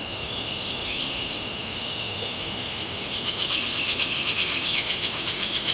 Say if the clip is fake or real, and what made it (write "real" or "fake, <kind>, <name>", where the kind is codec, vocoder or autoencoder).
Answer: fake, autoencoder, DAC-VAE